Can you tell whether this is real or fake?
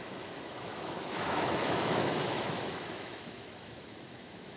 fake